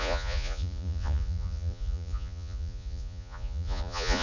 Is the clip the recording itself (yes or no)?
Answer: no